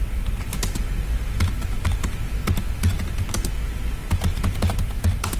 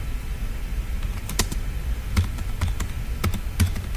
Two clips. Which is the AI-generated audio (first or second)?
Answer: second